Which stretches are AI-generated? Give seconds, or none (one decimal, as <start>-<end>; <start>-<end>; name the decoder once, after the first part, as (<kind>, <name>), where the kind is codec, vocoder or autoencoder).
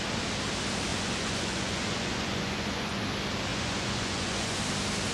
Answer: 0.9-3.0 (vocoder, Vocos); 3.5-4.6